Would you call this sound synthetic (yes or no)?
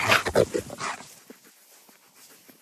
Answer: no